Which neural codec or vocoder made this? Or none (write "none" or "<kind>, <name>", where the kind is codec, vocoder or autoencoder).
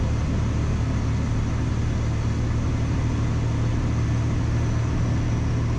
none